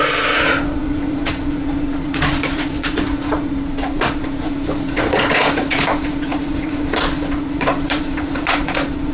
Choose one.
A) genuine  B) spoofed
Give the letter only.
B